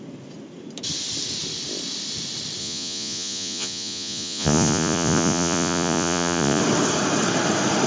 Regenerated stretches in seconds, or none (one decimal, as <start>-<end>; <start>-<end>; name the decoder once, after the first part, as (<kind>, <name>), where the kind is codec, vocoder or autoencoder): 2.6-6.6 (vocoder, Vocos)

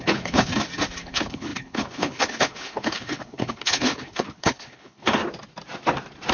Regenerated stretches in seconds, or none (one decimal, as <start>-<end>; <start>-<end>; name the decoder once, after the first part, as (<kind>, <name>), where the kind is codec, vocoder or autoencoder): 0.0-0.5 (codec, HILCodec); 1.0-5.2

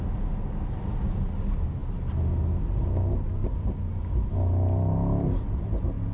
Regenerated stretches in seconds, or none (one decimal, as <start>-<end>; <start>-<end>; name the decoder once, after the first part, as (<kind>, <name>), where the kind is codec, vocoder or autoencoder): 3.4-4.0 (vocoder, BigVGAN v2)

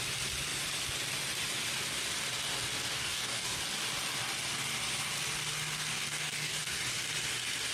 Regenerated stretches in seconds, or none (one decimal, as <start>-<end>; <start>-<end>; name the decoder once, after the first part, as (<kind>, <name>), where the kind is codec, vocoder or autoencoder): 2.9-3.6 (codec, DAC); 6.1-6.8

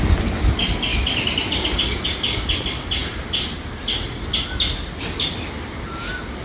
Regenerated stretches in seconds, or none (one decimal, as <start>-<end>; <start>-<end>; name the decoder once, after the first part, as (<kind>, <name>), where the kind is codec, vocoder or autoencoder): 0.9-1.7 (vocoder, BigVGAN v2)